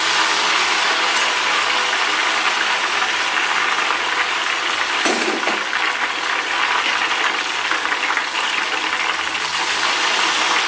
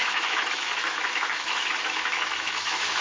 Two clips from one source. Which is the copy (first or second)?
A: second